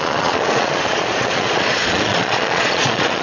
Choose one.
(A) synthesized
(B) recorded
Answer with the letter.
A